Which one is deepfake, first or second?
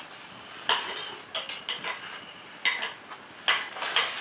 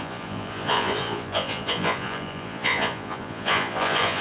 second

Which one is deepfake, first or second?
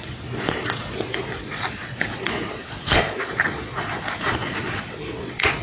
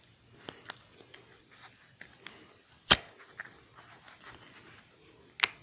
first